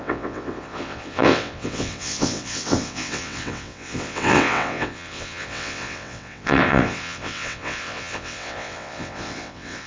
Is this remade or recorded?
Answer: remade